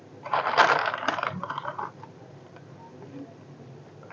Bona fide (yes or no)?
yes